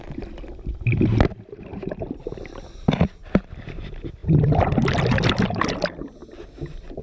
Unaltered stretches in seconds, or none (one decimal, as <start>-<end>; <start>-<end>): 0.0-1.7; 3.3-4.2; 5.8-7.0